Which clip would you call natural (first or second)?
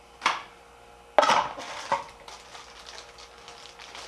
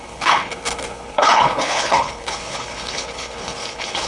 first